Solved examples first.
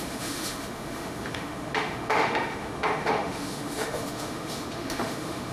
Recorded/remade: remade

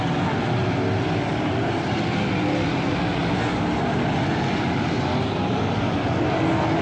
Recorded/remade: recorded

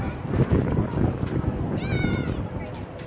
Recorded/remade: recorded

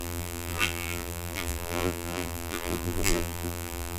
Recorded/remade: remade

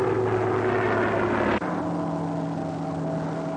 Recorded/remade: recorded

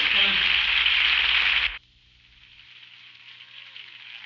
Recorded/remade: recorded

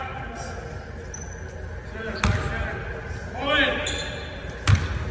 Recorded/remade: recorded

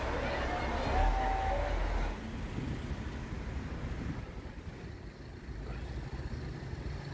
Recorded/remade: recorded